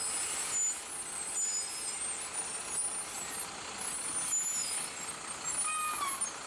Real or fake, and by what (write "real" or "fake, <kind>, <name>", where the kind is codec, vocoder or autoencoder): real